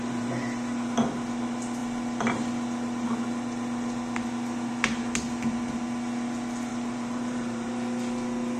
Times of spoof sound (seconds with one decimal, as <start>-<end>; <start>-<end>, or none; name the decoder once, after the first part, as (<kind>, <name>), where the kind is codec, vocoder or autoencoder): 6.7-7.7 (vocoder, BigVGAN v2)